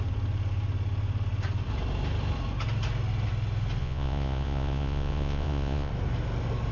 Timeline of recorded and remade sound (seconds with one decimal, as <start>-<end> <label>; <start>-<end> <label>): 0.0-3.8 recorded; 3.8-5.9 remade; 5.9-6.7 recorded